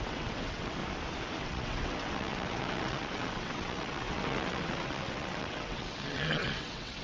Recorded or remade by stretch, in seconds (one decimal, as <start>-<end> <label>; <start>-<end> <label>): 0.0-0.8 remade; 0.8-1.4 recorded; 1.4-7.0 remade